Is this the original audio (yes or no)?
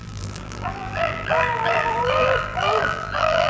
no